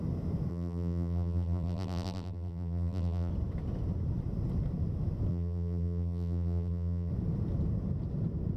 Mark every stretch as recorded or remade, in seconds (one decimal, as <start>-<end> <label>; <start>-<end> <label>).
0.0-0.5 recorded; 0.5-3.3 remade; 3.3-5.3 recorded; 5.3-7.1 remade; 7.1-8.6 recorded